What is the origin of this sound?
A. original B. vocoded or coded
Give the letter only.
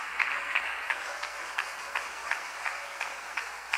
B